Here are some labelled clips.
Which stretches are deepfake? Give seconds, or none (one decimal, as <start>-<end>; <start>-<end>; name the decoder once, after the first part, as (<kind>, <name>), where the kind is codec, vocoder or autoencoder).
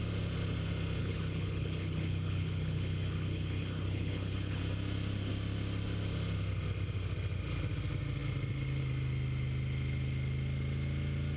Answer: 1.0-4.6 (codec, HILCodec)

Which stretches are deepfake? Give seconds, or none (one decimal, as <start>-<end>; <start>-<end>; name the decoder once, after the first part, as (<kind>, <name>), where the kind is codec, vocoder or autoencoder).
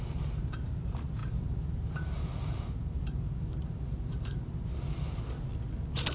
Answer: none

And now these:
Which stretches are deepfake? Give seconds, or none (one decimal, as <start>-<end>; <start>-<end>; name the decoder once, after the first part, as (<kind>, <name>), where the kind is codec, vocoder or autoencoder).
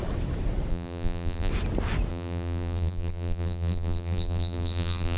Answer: 0.7-1.5 (vocoder, BigVGAN v2); 2.1-5.2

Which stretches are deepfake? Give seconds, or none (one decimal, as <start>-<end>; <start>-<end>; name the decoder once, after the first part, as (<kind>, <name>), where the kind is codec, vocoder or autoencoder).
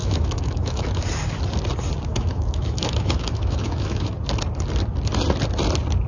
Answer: 0.0-1.0 (autoencoder, DAC-VAE); 2.1-4.1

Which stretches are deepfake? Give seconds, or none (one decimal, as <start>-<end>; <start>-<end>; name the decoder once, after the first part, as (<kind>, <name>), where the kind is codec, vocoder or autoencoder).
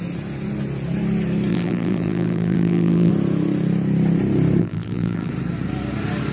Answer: 1.5-3.1 (vocoder, BigVGAN v2); 4.6-5.3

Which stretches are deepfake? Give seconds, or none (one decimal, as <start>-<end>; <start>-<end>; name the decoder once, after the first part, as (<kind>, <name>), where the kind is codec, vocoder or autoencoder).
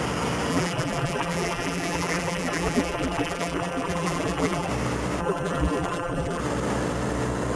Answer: 0.5-4.7 (vocoder, BigVGAN v2); 5.2-6.4